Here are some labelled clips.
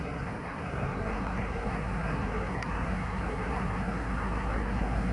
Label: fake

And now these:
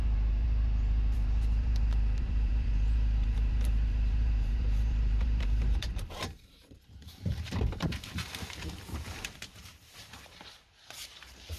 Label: fake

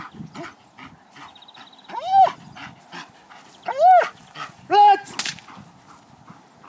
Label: real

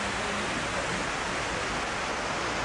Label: real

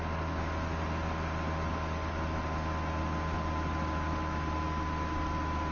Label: real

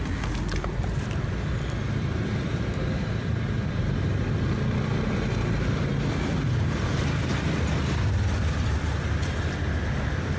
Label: real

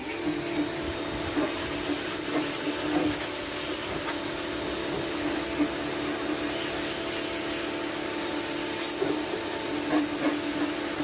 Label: real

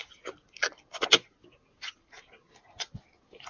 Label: real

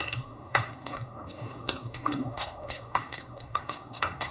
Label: fake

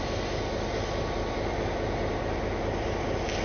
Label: real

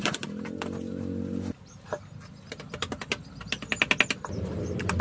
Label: real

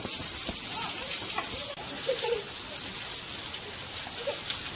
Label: real